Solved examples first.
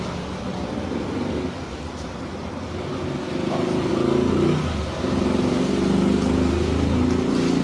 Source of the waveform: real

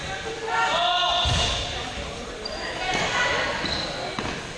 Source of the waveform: real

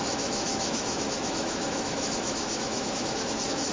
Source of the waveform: fake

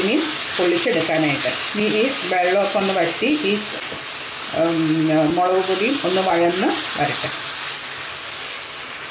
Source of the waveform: real